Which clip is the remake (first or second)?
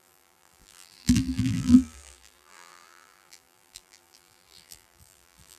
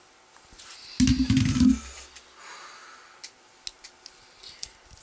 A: first